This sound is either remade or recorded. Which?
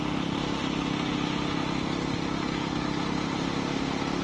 recorded